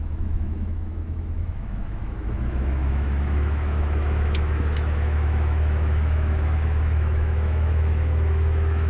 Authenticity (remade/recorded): remade